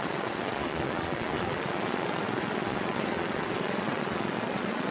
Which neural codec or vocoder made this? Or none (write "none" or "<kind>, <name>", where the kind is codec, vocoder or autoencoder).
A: vocoder, Vocos